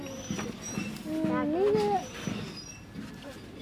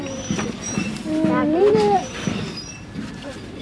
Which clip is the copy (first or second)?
second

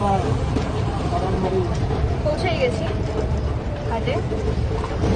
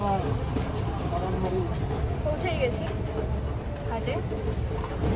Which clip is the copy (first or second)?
first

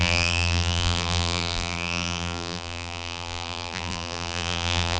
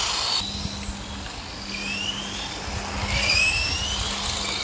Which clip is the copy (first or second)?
first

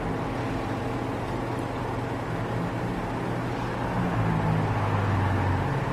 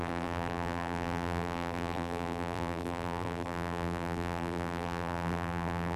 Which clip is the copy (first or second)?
second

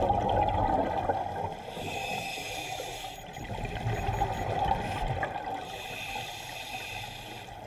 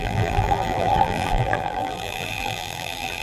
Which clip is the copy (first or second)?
second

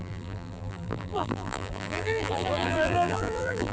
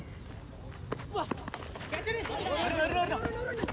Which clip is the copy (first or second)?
first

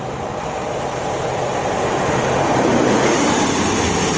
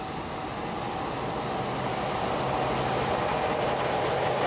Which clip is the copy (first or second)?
first